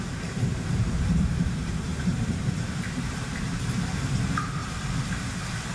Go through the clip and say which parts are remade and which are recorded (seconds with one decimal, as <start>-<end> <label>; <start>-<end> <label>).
0.0-4.6 remade; 4.6-5.7 recorded